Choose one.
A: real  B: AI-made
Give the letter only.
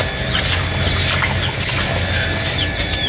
A